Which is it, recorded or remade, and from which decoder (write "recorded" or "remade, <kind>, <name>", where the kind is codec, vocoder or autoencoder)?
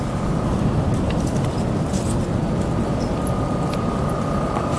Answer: recorded